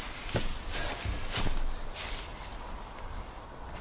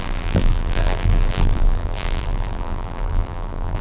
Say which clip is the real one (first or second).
first